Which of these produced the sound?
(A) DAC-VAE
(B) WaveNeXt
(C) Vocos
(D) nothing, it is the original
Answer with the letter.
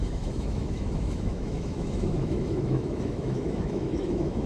A